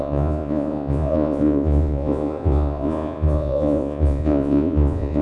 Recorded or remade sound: remade